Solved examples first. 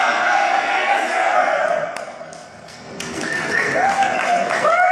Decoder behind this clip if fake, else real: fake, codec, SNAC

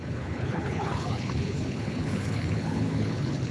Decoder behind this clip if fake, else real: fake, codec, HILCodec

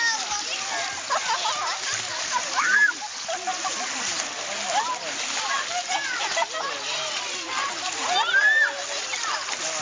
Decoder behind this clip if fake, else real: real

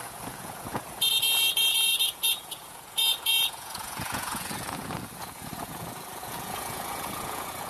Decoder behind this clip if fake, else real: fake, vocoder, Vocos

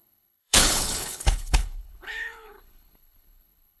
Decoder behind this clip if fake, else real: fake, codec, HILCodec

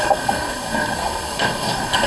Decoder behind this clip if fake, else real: fake, codec, SNAC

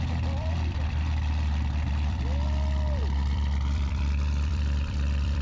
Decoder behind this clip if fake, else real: fake, vocoder, BigVGAN v2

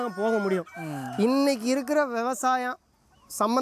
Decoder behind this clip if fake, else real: real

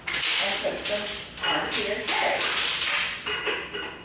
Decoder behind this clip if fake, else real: real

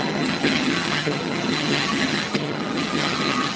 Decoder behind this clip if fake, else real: fake, vocoder, HiFi-GAN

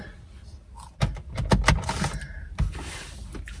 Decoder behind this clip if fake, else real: real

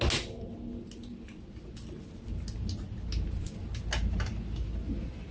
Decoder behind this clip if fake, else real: real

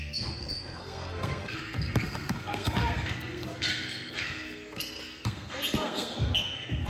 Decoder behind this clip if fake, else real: fake, codec, SNAC